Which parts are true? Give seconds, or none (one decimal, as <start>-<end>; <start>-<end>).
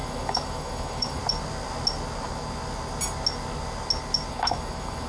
1.2-4.3